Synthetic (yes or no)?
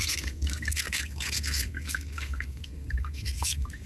yes